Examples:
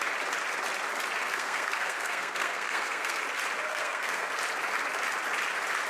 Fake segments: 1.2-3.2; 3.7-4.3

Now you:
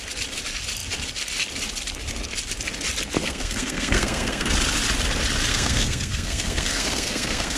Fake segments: 3.2-4.5; 5.5-7.6

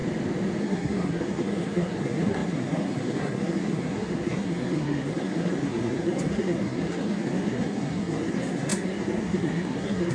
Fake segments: 0.6-10.1

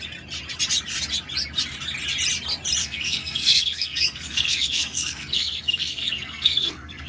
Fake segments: 2.8-7.1

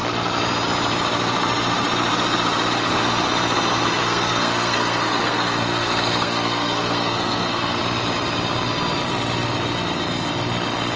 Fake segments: 4.0-7.8